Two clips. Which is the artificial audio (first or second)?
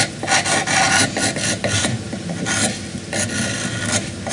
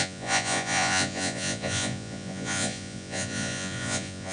second